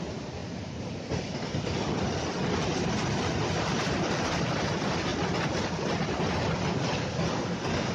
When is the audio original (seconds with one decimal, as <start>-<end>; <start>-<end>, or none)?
0.4-1.2; 5.1-7.9